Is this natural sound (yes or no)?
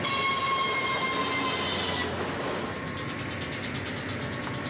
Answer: yes